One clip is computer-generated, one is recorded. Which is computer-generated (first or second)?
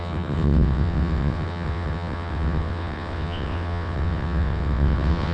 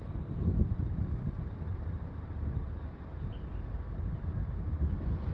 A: first